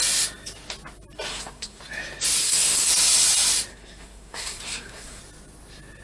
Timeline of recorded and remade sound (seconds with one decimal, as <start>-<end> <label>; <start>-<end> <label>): 0.0-1.3 recorded; 1.3-1.8 remade; 1.8-2.4 recorded; 2.4-2.9 remade; 2.9-3.7 recorded; 3.7-5.2 remade; 5.2-6.0 recorded